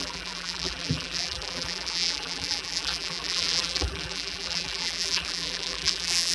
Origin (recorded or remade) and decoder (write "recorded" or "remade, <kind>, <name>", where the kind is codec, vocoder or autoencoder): remade, vocoder, BigVGAN v2